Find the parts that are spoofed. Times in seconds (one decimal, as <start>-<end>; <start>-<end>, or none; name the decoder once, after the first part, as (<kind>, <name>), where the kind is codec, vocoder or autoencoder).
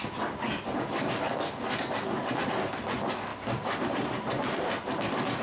3.3-5.4 (vocoder, BigVGAN v2)